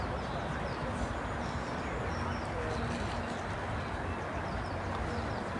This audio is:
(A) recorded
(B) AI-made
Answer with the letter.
A